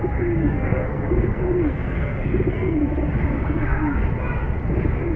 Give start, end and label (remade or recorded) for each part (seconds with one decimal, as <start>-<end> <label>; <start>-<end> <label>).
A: 0.0-0.4 recorded; 0.4-2.8 remade; 2.8-3.4 recorded; 3.4-4.0 remade; 4.0-5.2 recorded